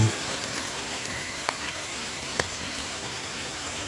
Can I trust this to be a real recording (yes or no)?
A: no